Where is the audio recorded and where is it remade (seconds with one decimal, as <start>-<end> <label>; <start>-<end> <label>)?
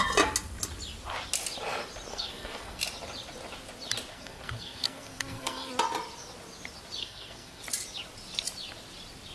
0.0-2.1 recorded; 2.1-2.8 remade; 2.8-4.1 recorded; 4.1-5.7 remade; 5.7-7.0 recorded; 7.0-7.6 remade; 7.6-9.3 recorded